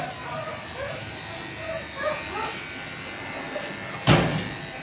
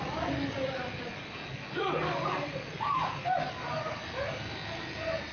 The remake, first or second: second